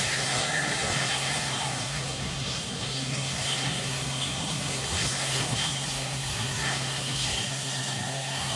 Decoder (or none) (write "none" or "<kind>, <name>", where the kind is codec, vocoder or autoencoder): codec, SNAC